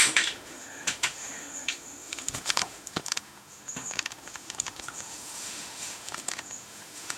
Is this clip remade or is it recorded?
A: remade